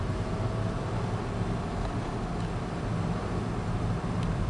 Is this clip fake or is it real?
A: real